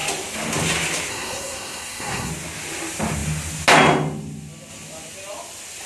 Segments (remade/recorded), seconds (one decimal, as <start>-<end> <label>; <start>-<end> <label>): 0.0-1.1 recorded; 1.1-2.3 remade; 2.3-5.9 recorded

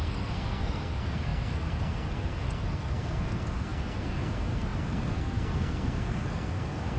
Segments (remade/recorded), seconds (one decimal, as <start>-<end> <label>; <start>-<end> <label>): 0.0-7.0 remade

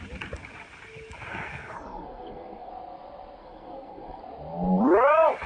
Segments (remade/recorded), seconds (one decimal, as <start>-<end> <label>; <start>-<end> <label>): 0.0-1.3 recorded; 1.3-2.7 remade; 2.7-3.4 recorded; 3.4-4.2 remade; 4.2-5.5 recorded

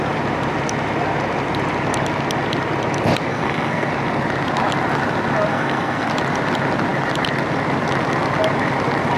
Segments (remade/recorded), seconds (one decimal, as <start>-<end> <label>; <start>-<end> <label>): 0.0-3.3 recorded; 3.3-3.9 remade; 3.9-5.5 recorded; 5.5-6.1 remade; 6.1-9.2 recorded